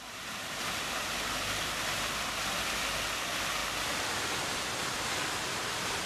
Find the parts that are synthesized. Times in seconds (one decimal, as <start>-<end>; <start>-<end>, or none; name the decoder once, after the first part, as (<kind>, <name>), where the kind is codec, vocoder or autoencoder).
none

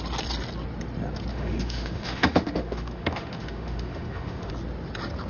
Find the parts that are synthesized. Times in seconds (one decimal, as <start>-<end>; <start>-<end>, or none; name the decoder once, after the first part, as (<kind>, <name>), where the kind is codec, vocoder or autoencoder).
1.3-4.5 (autoencoder, DAC-VAE)

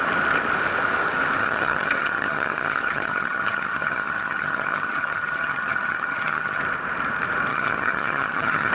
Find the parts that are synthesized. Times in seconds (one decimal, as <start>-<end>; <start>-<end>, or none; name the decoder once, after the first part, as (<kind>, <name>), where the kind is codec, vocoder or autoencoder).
1.4-6.6 (vocoder, HiFi-GAN); 7.5-8.7

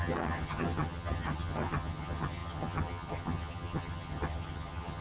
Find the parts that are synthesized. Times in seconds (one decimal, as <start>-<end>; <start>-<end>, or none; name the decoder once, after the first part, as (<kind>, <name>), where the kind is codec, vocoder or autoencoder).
0.0-5.0 (vocoder, HiFi-GAN)

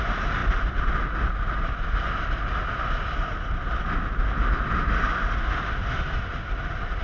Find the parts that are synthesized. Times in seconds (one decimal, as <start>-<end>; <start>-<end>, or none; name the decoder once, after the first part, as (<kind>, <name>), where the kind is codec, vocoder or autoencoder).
none

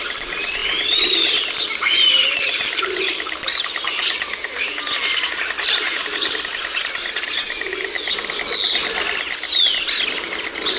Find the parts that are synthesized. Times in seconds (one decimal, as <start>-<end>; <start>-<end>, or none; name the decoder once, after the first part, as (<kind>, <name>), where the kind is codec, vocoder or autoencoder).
0.6-3.6 (vocoder, BigVGAN v2)

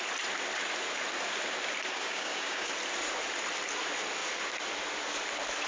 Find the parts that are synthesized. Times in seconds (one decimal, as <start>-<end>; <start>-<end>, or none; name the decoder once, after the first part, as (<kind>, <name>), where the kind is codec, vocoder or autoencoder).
1.9-2.7 (codec, DAC)

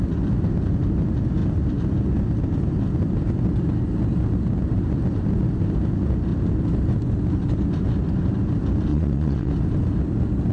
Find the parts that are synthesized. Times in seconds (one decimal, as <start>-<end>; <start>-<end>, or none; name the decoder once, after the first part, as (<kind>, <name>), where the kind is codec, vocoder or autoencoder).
8.9-9.5 (vocoder, Vocos)